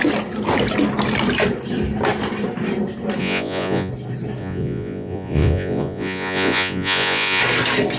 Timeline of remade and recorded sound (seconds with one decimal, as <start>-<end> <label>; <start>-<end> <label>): 0.0-3.2 recorded; 3.2-3.9 remade; 3.9-4.4 recorded; 4.4-7.4 remade; 7.4-8.0 recorded